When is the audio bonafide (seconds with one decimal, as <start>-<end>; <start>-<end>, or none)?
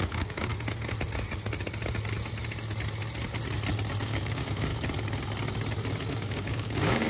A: 0.5-4.0; 4.7-6.1